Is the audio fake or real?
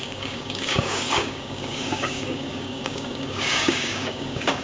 fake